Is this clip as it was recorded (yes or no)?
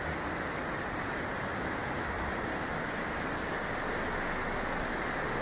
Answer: yes